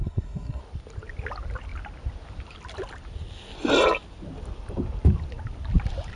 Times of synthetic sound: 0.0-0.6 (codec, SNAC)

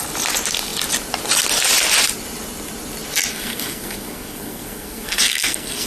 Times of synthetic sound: 3.3-5.9 (codec, SNAC)

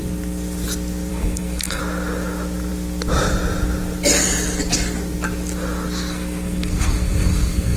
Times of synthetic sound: 1.1-1.8 (codec, SNAC); 6.1-7.8

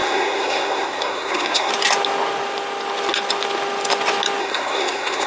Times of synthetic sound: 0.0-1.7 (codec, SNAC); 4.4-5.3

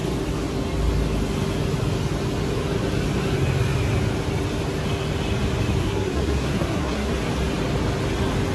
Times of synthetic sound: 5.8-7.1 (codec, SNAC)

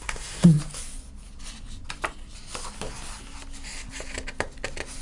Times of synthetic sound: 0.0-0.6 (codec, SNAC)

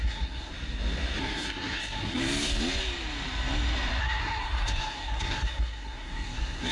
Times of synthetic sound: 0.0-0.5 (codec, SNAC); 1.2-2.2; 4.0-6.7